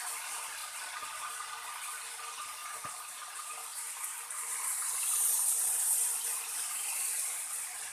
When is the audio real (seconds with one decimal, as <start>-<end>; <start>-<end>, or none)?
0.0-2.6; 3.2-7.9

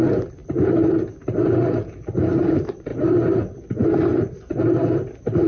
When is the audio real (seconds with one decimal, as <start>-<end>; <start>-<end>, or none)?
0.0-5.5

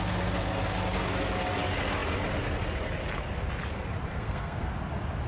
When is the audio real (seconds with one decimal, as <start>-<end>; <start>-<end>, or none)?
0.0-4.1; 4.7-5.3

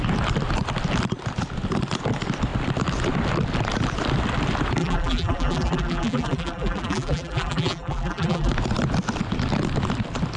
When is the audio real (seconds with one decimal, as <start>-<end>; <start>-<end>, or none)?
0.0-4.8; 8.5-10.4

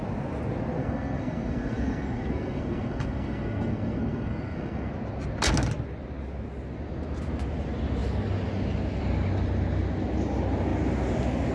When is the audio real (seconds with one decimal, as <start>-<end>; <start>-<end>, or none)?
0.0-0.8; 4.9-11.5

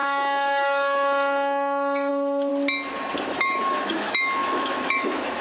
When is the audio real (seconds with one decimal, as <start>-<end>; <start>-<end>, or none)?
2.5-3.2

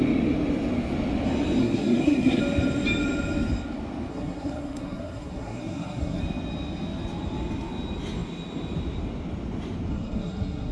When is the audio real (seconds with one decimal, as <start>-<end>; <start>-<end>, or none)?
0.0-1.6; 2.4-4.1; 6.2-9.9